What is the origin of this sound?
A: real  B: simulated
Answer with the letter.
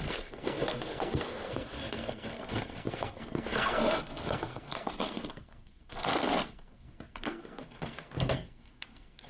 B